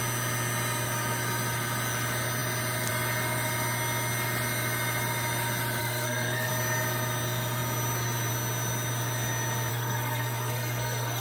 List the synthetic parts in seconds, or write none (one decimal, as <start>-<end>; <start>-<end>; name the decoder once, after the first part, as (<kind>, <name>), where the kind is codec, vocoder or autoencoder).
5.8-6.5 (codec, SNAC); 9.7-11.2